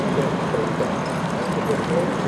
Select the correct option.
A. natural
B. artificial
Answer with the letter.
A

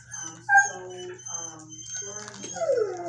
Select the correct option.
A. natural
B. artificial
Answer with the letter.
A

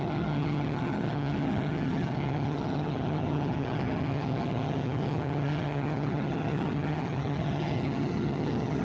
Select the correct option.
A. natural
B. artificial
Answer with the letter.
B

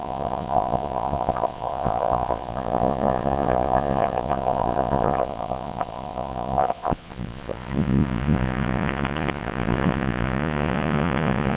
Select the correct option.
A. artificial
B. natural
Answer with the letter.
A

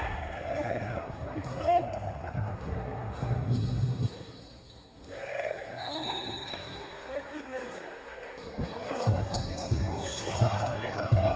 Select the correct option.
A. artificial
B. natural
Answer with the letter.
A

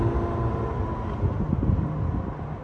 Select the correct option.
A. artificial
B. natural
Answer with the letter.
B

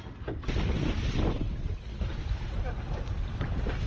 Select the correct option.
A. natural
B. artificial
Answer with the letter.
A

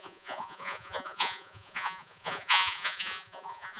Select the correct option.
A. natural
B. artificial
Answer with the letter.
B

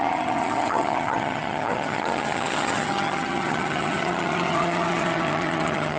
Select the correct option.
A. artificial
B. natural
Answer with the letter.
A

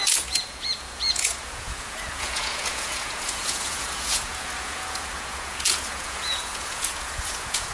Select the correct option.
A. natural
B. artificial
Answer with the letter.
B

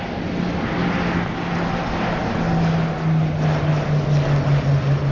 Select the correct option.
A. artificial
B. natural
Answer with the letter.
B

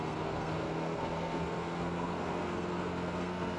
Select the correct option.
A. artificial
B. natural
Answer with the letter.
A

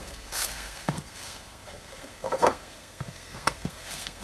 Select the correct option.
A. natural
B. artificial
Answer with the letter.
B